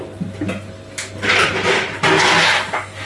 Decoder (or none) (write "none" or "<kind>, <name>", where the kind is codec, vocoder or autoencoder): none